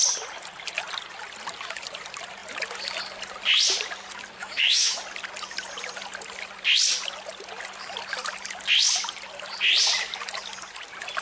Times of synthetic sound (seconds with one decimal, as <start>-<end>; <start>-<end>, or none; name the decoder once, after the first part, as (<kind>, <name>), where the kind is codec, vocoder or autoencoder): 4.4-5.0 (autoencoder, DAC-VAE)